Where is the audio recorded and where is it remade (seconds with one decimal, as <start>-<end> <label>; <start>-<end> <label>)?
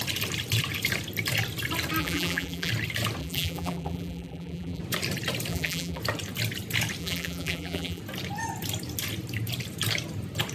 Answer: 0.0-2.0 recorded; 2.0-2.7 remade; 2.7-3.2 recorded; 3.2-4.8 remade; 4.8-5.5 recorded; 5.5-6.0 remade; 6.0-7.0 recorded; 7.0-8.0 remade; 8.0-10.5 recorded